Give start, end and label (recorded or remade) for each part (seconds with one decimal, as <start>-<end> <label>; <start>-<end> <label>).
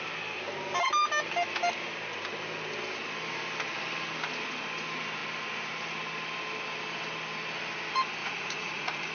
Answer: 0.0-8.2 recorded; 8.2-9.1 remade